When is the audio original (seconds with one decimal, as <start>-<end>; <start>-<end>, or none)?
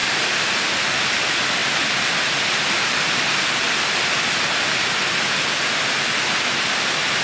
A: 0.0-7.2